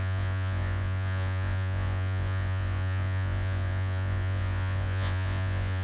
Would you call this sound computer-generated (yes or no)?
yes